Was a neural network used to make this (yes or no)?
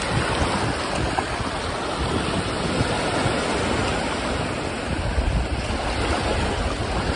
no